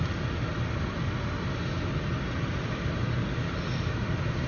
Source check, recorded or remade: recorded